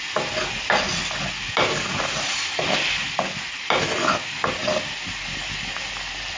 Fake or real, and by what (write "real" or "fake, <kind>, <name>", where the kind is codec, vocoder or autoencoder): real